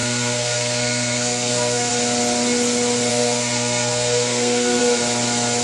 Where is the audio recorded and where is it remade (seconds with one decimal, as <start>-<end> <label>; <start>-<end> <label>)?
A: 0.0-1.9 remade; 1.9-3.1 recorded; 3.1-4.8 remade; 4.8-5.6 recorded